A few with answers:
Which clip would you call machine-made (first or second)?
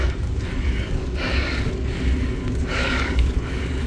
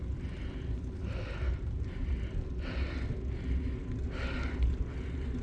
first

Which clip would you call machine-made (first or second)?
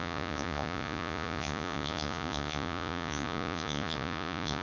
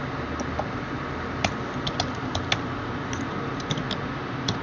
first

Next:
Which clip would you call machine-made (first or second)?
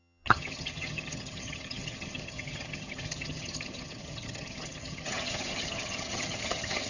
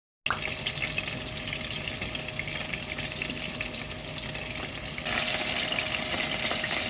first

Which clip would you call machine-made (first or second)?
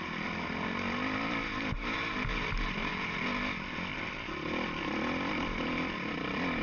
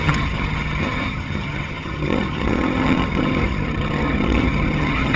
second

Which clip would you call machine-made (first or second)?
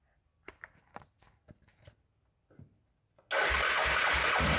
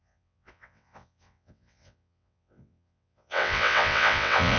second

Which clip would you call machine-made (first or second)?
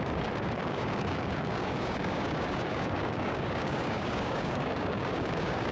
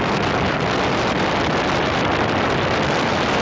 first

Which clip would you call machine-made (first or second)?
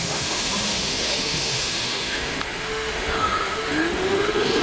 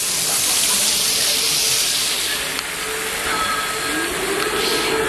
first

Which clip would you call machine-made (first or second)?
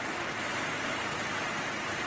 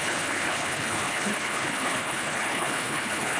second